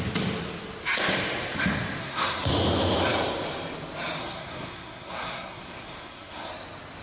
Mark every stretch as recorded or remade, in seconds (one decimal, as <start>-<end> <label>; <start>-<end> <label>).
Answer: 0.0-2.0 recorded; 2.0-2.5 remade; 2.5-4.2 recorded; 4.2-6.5 remade; 6.5-7.0 recorded